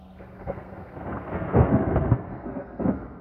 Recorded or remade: remade